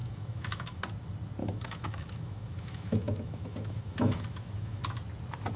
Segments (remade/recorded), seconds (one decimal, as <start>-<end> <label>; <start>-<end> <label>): 0.0-0.8 remade; 0.8-1.4 recorded; 1.4-4.8 remade; 4.8-5.6 recorded